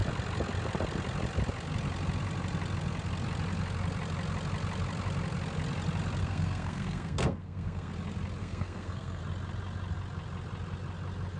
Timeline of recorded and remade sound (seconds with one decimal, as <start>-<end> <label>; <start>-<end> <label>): 0.0-6.2 recorded; 6.2-7.9 remade; 7.9-8.4 recorded; 8.4-9.2 remade; 9.2-11.4 recorded